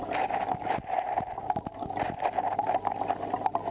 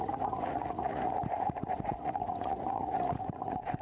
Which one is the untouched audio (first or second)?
first